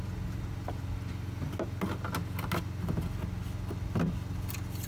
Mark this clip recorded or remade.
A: recorded